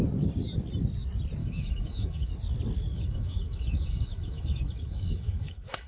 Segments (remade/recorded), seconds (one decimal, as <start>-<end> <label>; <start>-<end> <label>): 0.0-1.4 recorded; 1.4-2.3 remade; 2.3-2.9 recorded; 2.9-5.9 remade

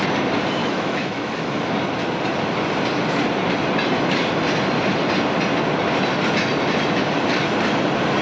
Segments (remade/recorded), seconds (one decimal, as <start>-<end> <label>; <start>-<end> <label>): 0.0-0.6 recorded; 0.6-1.7 remade; 1.7-8.2 recorded

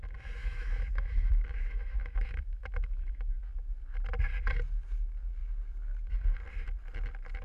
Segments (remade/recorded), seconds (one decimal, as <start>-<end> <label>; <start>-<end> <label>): 0.0-0.4 recorded; 0.4-3.4 remade; 3.4-7.4 recorded

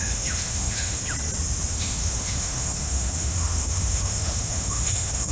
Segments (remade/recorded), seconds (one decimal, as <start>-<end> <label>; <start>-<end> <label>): 0.0-1.0 remade; 1.0-1.7 recorded; 1.7-5.3 remade

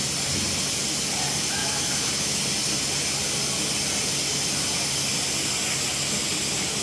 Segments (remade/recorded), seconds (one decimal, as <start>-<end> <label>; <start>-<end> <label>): 0.0-1.6 recorded; 1.6-2.4 remade; 2.4-6.8 recorded

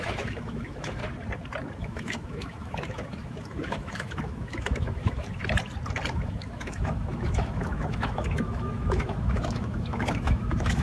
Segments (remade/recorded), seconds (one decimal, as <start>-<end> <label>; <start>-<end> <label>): 0.0-1.0 remade; 1.0-1.8 recorded; 1.8-5.4 remade; 5.4-6.1 recorded; 6.1-10.8 remade

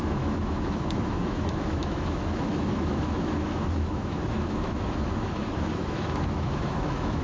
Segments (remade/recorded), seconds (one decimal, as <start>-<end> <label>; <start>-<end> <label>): 0.0-7.2 remade